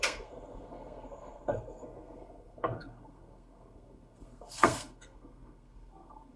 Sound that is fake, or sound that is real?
fake